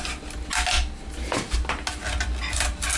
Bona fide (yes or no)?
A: yes